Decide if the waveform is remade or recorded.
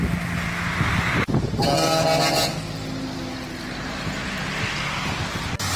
recorded